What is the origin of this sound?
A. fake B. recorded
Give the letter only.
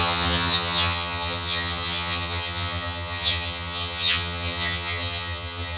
A